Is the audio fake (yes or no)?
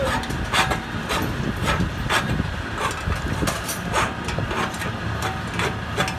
no